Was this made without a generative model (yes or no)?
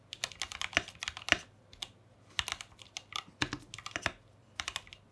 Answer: yes